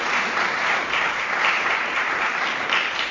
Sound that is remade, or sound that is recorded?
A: remade